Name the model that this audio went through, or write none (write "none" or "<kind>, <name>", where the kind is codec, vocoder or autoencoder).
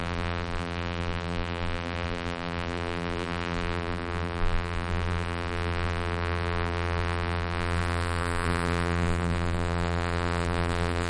vocoder, BigVGAN v2